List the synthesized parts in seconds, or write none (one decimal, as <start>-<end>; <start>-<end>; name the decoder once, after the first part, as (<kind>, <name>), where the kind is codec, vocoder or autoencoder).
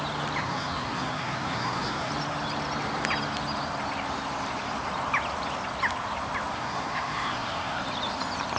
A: 0.4-2.1 (codec, SNAC); 6.5-7.8